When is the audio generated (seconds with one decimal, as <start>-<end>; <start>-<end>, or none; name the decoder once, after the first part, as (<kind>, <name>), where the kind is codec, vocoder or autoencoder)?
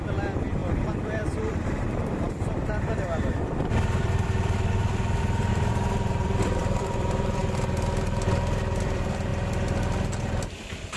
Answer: 0.0-7.4 (vocoder, BigVGAN v2); 8.8-9.3; 10.6-11.0